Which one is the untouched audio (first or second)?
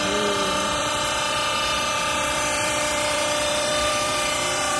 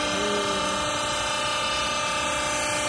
second